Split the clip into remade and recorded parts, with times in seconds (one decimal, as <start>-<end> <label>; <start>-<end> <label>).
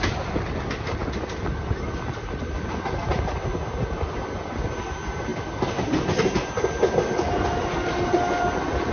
0.0-8.9 recorded